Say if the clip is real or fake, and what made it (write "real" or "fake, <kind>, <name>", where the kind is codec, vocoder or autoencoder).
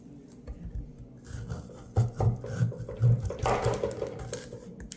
real